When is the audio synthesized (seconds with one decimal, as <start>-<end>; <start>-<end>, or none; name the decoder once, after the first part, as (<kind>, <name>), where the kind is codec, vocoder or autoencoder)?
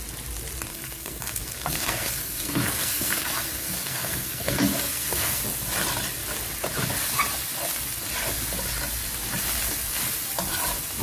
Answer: 0.7-5.4 (codec, SNAC)